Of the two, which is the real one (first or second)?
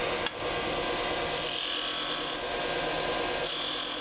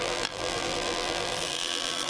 first